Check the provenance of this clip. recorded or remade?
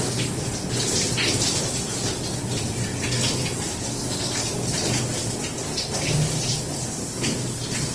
recorded